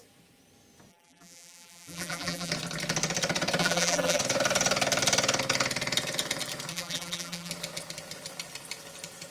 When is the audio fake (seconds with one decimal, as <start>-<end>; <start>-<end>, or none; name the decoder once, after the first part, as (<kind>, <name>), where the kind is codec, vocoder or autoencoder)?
0.9-2.5 (vocoder, BigVGAN v2); 3.6-4.2; 6.7-7.5